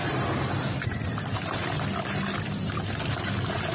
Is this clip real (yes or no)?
yes